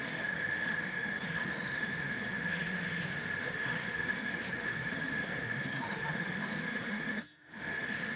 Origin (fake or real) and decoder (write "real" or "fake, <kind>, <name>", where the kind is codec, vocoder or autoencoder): fake, autoencoder, DAC-VAE